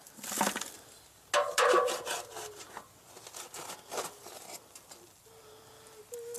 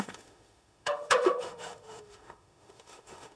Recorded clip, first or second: first